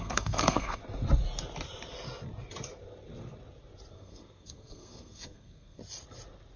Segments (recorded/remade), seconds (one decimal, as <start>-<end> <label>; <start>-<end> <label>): 0.0-0.8 remade; 0.8-3.9 recorded; 3.9-5.8 remade; 5.8-6.6 recorded